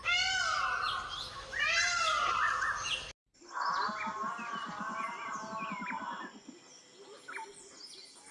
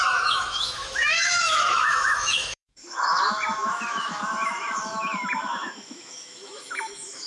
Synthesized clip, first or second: second